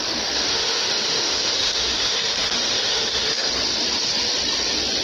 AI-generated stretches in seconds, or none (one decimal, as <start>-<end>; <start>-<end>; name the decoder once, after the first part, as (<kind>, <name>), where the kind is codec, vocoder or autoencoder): 0.5-3.5 (autoencoder, DAC-VAE)